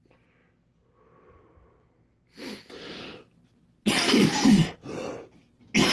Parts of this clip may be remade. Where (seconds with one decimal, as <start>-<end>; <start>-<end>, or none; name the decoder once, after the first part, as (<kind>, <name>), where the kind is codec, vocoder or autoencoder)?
none

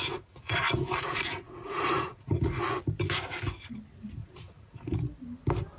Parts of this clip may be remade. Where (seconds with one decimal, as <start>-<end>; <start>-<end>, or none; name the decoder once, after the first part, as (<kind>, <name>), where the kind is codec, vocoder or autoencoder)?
0.0-2.6 (vocoder, Vocos); 4.2-5.0

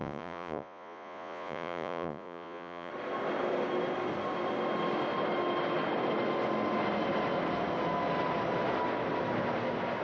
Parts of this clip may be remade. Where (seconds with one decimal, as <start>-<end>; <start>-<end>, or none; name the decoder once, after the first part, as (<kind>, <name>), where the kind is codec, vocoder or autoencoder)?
0.0-2.9 (vocoder, Vocos)

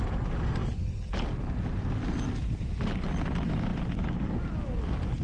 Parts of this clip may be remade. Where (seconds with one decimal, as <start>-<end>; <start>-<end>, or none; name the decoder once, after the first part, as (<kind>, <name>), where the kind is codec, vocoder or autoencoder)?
none

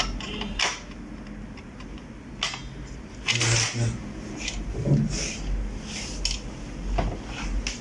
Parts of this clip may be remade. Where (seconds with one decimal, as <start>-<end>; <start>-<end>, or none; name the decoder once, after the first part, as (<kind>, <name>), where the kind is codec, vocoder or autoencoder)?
none

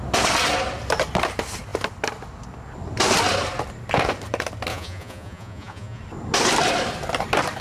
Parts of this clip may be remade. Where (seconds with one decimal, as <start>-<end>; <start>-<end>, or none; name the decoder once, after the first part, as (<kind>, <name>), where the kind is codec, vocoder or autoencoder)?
4.7-6.0 (vocoder, Vocos)